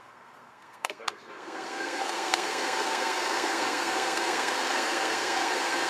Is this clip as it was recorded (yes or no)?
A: no